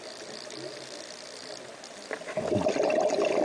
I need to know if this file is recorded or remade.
recorded